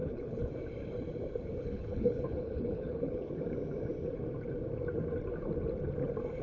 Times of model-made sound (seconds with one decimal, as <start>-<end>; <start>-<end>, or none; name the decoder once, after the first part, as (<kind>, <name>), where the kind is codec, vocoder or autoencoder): 0.0-0.5 (codec, HILCodec); 1.6-3.3